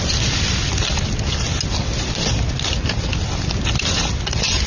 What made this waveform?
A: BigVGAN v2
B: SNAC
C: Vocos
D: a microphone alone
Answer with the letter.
D